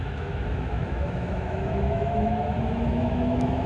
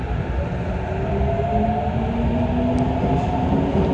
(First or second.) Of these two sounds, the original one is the second